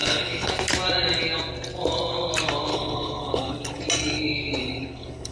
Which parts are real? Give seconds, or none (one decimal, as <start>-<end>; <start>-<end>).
0.5-2.7; 3.8-4.6